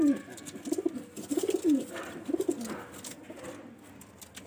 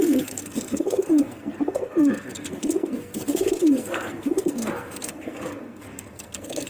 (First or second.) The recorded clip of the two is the first